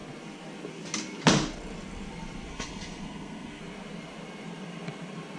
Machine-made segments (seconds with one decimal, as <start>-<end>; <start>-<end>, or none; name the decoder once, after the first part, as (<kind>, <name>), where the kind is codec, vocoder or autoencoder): 2.5-3.6 (codec, SNAC)